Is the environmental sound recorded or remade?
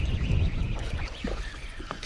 remade